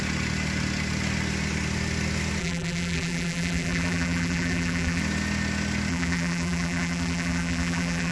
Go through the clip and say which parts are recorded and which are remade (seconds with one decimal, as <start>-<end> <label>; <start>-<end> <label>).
0.0-2.4 recorded; 2.4-5.0 remade; 5.0-5.9 recorded; 5.9-8.1 remade

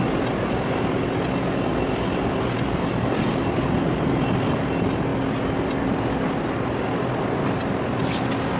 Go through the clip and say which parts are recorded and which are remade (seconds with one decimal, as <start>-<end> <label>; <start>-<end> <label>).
0.0-8.6 recorded

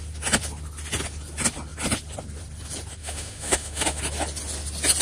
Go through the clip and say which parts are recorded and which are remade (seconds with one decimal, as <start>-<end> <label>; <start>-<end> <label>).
0.0-3.0 recorded; 3.0-4.0 remade; 4.0-5.0 recorded